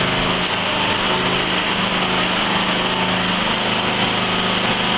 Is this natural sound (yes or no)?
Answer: yes